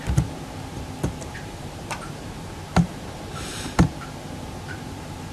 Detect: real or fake fake